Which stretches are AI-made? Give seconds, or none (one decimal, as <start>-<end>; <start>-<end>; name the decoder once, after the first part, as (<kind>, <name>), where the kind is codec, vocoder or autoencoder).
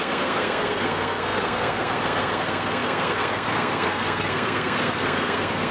0.0-5.7 (codec, SNAC)